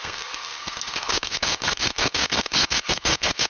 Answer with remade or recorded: remade